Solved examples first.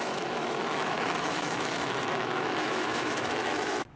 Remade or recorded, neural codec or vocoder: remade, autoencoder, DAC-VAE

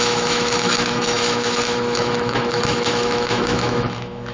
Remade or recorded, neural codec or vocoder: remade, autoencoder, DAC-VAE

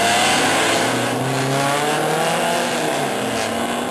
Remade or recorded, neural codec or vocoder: recorded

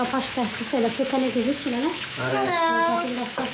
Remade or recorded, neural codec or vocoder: remade, autoencoder, DAC-VAE